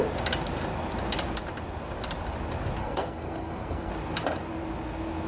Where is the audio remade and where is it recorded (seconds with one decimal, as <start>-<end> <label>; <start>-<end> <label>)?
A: 0.0-2.8 recorded; 2.8-3.9 remade; 3.9-5.3 recorded